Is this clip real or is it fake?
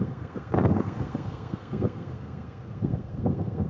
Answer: fake